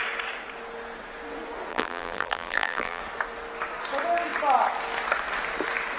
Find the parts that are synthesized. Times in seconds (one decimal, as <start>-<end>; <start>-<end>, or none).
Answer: 1.7-3.0